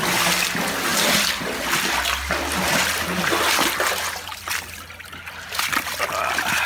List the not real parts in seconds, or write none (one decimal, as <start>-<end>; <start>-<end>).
none